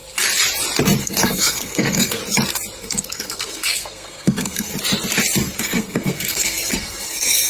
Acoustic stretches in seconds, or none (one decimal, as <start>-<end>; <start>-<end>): 0.0-1.0; 2.2-2.8; 4.7-5.6